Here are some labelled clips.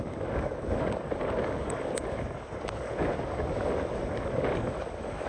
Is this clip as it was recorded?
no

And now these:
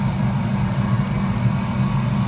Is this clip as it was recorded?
yes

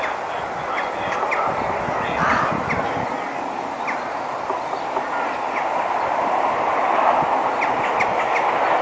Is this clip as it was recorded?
yes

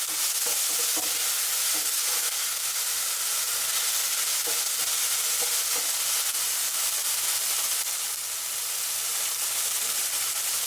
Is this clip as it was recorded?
yes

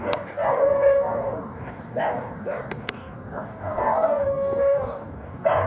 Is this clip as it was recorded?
no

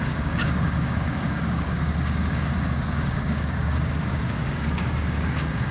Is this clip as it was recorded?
no